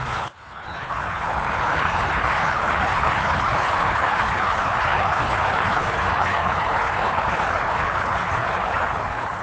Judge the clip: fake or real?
fake